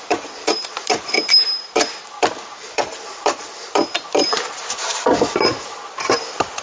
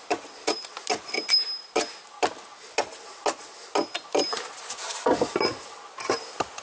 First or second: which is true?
second